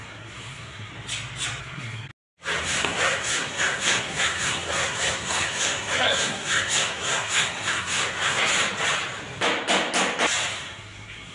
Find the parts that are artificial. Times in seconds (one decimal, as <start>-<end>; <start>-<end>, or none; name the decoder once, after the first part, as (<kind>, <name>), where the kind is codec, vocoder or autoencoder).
0.0-0.9 (codec, SNAC); 1.6-2.1; 2.6-8.5; 10.5-11.3